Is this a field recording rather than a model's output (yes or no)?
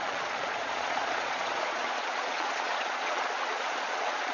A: no